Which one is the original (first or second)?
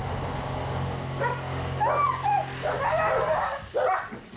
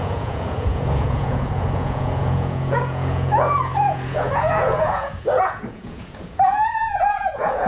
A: first